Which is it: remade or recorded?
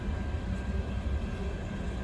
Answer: recorded